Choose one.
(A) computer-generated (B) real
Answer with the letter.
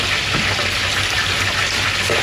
B